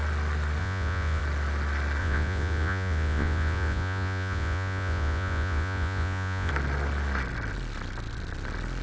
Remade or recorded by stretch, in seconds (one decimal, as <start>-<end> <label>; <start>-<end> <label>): 0.0-0.6 recorded; 0.6-1.2 remade; 1.2-2.0 recorded; 2.0-6.5 remade; 6.5-8.8 recorded